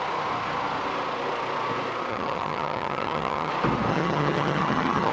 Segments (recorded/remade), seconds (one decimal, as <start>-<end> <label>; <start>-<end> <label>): 0.0-2.1 recorded; 2.1-3.5 remade; 3.5-3.9 recorded; 3.9-5.1 remade